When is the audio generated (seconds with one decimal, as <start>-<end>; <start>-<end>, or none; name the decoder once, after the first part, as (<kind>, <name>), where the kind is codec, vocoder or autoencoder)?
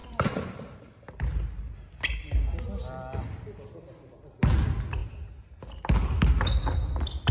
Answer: 0.0-1.0 (vocoder, BigVGAN v2)